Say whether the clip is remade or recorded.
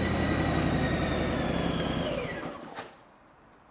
recorded